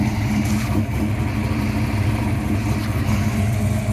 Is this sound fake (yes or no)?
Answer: no